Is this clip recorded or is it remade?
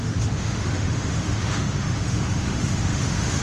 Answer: remade